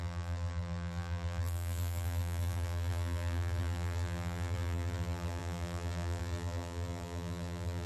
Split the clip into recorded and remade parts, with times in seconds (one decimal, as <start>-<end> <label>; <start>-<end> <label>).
0.0-7.9 remade